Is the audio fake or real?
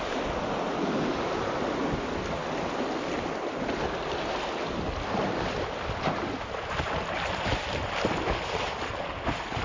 real